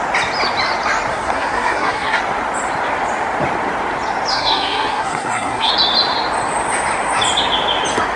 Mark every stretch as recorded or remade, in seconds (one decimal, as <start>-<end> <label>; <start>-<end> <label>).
0.0-1.1 recorded; 1.1-2.2 remade; 2.2-4.3 recorded; 4.3-5.7 remade; 5.7-8.2 recorded